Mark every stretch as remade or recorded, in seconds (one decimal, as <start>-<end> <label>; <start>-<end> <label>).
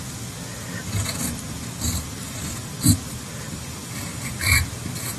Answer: 0.0-3.8 recorded; 3.8-5.2 remade